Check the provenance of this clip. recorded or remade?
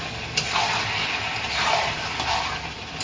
recorded